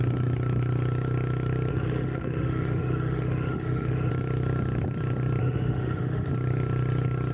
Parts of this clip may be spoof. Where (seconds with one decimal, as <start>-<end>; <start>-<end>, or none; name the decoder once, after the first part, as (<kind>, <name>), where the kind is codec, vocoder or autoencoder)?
1.7-4.1 (autoencoder, DAC-VAE); 5.4-6.3